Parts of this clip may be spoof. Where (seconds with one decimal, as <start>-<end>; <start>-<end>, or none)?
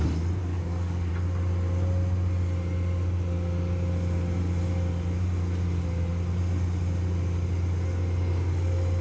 0.4-1.1